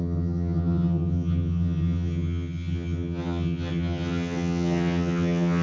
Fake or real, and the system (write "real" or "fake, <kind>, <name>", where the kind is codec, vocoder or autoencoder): fake, vocoder, HiFi-GAN